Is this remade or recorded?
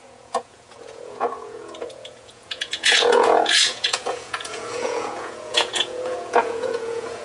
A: remade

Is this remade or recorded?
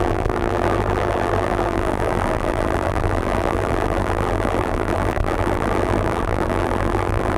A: remade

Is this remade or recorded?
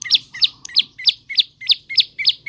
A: recorded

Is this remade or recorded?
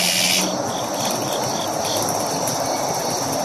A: recorded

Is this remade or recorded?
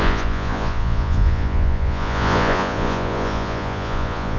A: remade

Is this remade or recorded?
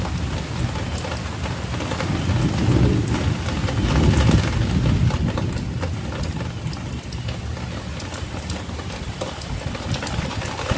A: recorded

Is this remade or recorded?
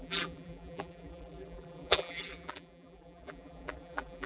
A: remade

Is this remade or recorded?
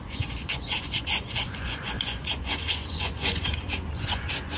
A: remade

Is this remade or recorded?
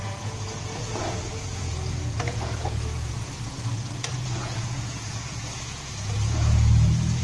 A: remade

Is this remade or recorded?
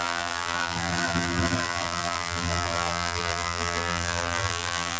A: remade